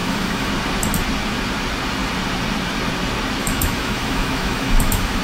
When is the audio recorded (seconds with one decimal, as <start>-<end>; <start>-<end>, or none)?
0.5-3.4